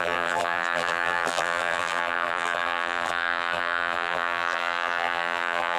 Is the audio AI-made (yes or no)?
yes